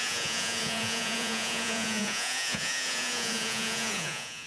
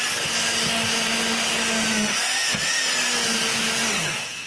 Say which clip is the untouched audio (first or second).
second